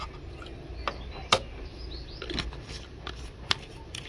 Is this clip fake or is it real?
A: real